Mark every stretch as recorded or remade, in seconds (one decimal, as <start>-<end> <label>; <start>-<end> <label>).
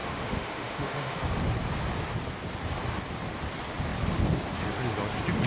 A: 0.0-1.2 remade; 1.2-5.5 recorded